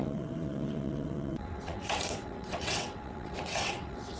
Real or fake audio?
fake